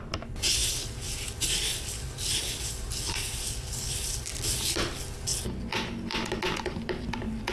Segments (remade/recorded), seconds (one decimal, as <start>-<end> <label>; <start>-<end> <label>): 0.0-7.5 recorded